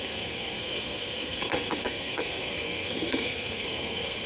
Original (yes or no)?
no